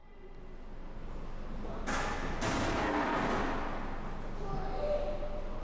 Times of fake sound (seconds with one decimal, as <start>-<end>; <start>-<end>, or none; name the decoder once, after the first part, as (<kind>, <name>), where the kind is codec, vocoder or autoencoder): none